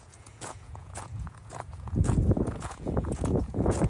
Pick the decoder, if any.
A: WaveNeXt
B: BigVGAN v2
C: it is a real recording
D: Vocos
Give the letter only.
D